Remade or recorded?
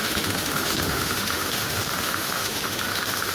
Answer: remade